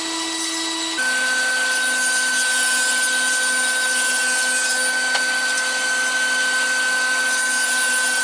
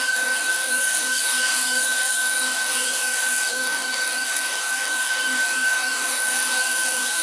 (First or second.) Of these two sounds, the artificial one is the second